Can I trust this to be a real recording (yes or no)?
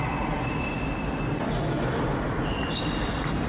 yes